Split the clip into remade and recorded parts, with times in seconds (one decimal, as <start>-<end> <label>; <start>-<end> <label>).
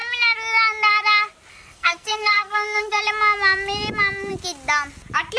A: 0.0-1.5 recorded; 1.5-3.0 remade; 3.0-5.4 recorded